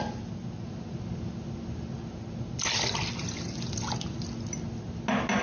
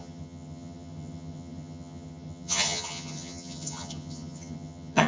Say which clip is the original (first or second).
first